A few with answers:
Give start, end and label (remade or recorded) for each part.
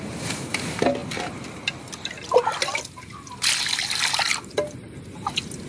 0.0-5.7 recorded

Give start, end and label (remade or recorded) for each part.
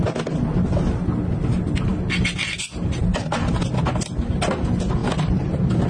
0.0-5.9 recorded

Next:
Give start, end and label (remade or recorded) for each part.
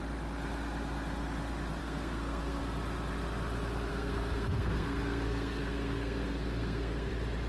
0.0-1.8 recorded; 1.8-2.6 remade; 2.6-3.9 recorded; 3.9-7.1 remade; 7.1-7.5 recorded